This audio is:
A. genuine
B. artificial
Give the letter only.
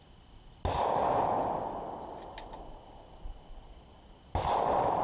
A